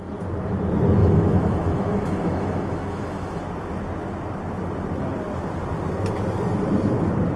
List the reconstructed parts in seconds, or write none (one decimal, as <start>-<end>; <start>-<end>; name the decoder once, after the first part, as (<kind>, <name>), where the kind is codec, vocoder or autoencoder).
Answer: 1.0-3.4 (autoencoder, DAC-VAE)